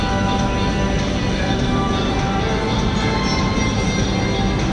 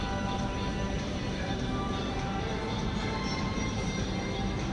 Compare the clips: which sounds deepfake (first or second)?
second